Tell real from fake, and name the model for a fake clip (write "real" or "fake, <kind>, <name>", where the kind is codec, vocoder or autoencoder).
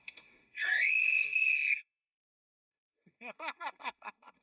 fake, codec, SNAC